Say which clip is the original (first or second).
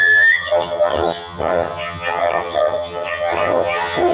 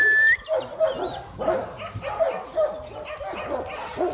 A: second